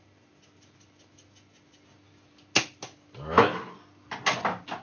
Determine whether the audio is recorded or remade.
recorded